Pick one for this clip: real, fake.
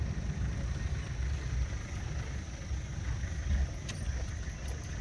real